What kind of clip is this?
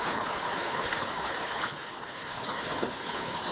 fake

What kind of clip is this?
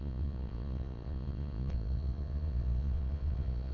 fake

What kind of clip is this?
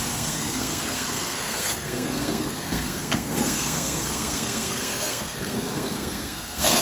fake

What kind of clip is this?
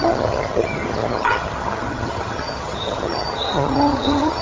fake